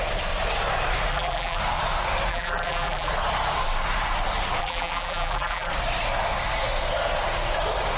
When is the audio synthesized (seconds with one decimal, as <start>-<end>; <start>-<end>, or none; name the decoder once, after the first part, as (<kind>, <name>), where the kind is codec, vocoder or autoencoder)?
1.1-1.6 (vocoder, BigVGAN v2); 2.3-3.1; 4.6-5.7